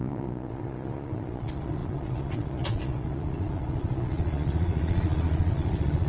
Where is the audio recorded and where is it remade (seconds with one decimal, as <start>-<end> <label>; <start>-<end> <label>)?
0.0-6.1 remade

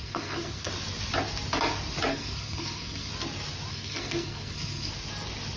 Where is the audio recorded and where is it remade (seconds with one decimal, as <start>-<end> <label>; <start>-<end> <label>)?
0.0-0.7 remade; 0.7-2.1 recorded; 2.1-3.1 remade; 3.1-3.7 recorded; 3.7-4.9 remade; 4.9-5.6 recorded

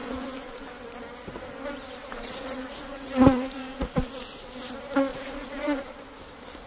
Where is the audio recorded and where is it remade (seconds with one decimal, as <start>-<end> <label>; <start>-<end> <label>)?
0.0-0.7 remade; 0.7-2.0 recorded; 2.0-4.5 remade; 4.5-5.1 recorded; 5.1-5.8 remade; 5.8-6.7 recorded